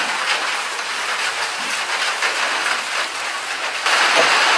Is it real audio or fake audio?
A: real